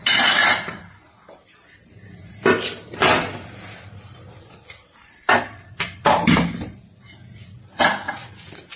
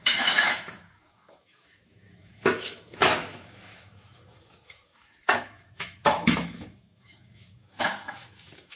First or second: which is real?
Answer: first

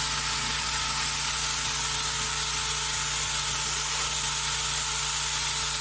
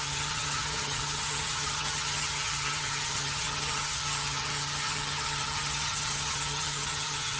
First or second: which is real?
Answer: first